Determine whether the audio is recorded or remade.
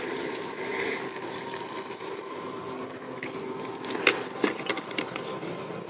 recorded